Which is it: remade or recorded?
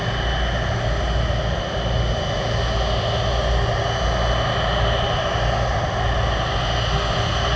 recorded